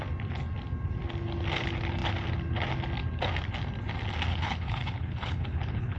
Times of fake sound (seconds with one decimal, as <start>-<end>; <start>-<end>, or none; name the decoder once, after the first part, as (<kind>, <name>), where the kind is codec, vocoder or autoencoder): 4.3-6.0 (codec, HILCodec)

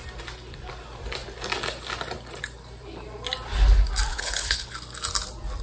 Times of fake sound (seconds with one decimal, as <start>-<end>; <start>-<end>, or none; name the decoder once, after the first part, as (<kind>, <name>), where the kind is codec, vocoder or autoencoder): 4.1-4.7 (codec, HILCodec)

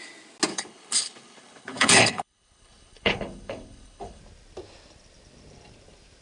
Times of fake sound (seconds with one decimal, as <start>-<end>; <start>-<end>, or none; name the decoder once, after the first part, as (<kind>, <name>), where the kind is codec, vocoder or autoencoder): 0.5-4.2 (codec, HILCodec)

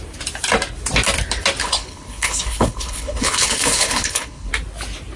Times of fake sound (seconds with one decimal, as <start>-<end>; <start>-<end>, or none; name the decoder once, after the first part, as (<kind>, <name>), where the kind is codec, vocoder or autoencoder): 1.6-4.5 (codec, HILCodec)

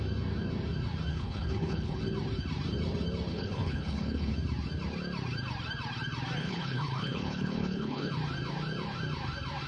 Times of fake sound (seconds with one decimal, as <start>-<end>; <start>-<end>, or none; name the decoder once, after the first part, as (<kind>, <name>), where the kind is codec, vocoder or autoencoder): 1.1-2.0 (codec, HILCodec); 3.3-4.3; 6.4-8.1

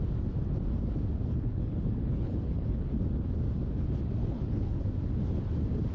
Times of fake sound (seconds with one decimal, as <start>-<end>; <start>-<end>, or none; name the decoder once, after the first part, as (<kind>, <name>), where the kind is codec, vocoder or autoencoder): 1.3-3.0 (codec, HILCodec); 4.2-4.8

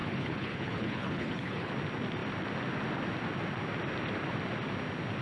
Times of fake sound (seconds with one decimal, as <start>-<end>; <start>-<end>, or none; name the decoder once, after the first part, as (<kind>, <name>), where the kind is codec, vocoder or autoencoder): 0.0-1.7 (codec, HILCodec)